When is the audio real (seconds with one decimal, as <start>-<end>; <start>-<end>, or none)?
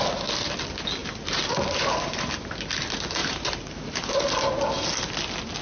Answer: 0.0-1.0; 2.3-3.2; 4.2-5.6